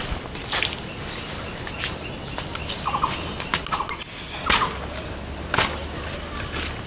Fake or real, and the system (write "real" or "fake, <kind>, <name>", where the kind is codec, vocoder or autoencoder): real